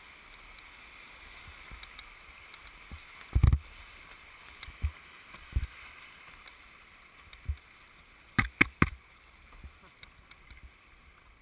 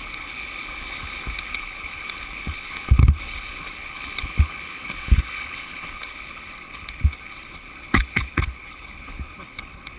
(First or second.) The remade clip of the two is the second